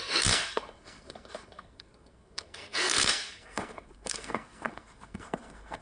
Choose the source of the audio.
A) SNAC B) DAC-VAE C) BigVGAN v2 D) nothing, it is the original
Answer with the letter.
A